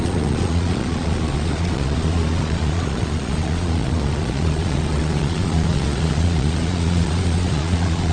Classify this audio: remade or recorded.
remade